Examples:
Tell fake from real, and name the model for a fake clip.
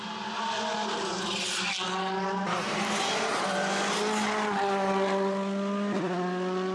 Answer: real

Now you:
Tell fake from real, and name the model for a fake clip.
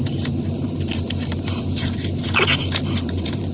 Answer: fake, vocoder, BigVGAN v2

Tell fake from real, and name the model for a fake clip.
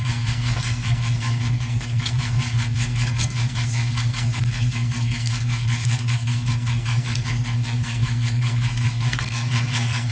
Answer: fake, codec, SNAC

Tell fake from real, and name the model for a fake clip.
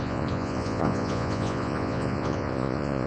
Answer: fake, vocoder, Vocos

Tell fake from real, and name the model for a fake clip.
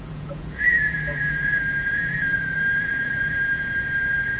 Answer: fake, vocoder, Vocos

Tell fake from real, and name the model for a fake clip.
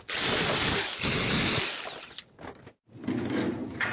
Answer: real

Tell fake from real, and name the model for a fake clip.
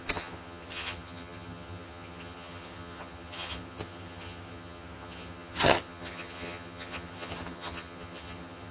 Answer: fake, vocoder, HiFi-GAN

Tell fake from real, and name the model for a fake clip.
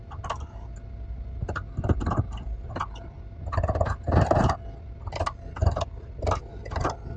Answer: real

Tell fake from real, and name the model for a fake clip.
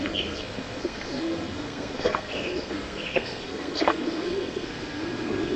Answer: fake, codec, SNAC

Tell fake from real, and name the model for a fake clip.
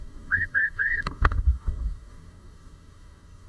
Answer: fake, codec, DAC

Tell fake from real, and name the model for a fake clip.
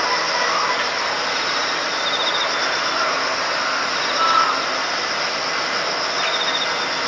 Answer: real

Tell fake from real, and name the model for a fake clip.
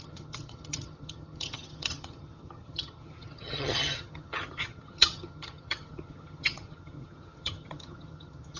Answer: fake, vocoder, HiFi-GAN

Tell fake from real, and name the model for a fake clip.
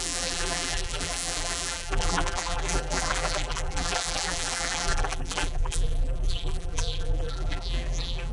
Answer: fake, vocoder, BigVGAN v2